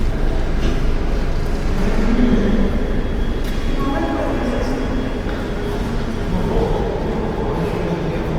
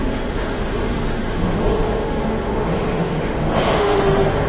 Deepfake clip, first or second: second